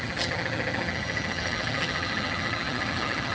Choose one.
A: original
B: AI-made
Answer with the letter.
B